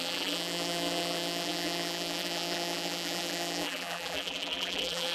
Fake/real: fake